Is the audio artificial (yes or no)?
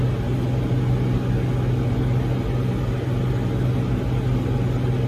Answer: no